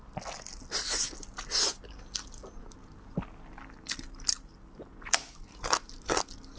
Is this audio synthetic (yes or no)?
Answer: no